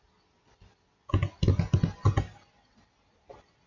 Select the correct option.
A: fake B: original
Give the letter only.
B